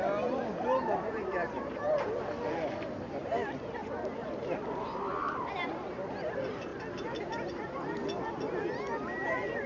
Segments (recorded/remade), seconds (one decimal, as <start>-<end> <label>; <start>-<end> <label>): 0.0-3.8 recorded; 3.8-6.3 remade; 6.3-9.7 recorded